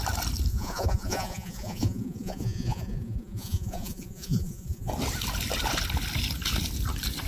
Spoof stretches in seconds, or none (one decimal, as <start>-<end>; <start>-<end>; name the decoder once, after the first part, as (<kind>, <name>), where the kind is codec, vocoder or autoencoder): 0.5-4.9 (vocoder, Vocos)